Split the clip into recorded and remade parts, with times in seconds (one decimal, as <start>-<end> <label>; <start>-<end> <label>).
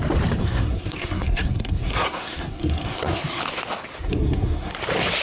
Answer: 0.0-0.4 recorded; 0.4-3.4 remade; 3.4-3.9 recorded; 3.9-4.7 remade; 4.7-5.2 recorded